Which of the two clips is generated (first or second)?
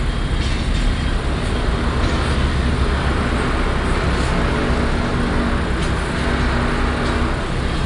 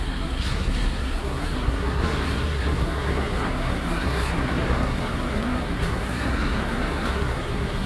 second